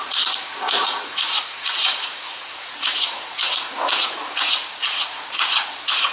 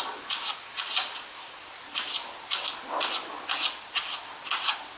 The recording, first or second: second